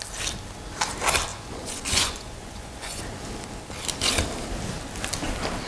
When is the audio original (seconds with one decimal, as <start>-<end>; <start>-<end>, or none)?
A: 0.0-1.3; 3.0-5.7